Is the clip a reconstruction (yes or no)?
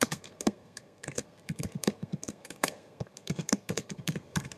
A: yes